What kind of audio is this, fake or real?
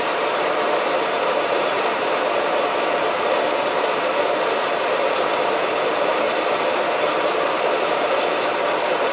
fake